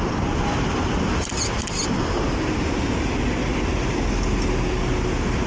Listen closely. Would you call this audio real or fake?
real